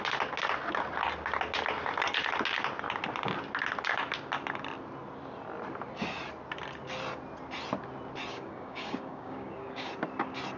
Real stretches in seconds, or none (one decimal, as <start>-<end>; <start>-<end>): 0.0-8.3; 9.9-10.6